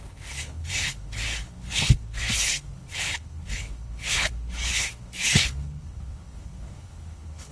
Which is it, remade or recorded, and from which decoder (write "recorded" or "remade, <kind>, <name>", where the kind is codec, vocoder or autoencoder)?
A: remade, codec, HILCodec